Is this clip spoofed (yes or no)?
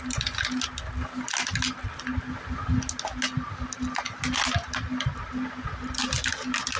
no